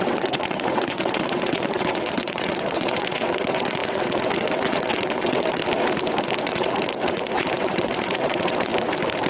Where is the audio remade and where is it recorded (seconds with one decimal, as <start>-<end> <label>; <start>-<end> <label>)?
0.0-5.6 remade; 5.6-6.4 recorded; 6.4-8.7 remade; 8.7-9.3 recorded